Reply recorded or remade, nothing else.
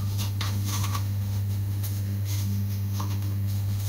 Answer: remade